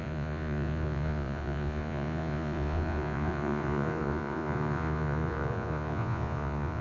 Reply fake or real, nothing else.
fake